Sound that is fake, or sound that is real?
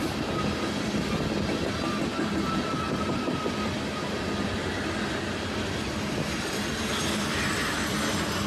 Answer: real